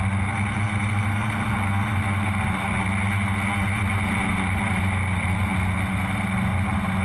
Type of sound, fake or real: real